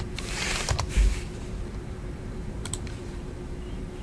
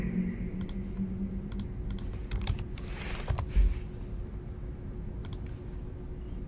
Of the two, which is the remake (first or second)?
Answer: first